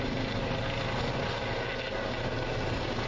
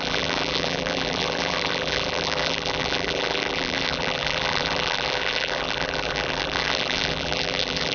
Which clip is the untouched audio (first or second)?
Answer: first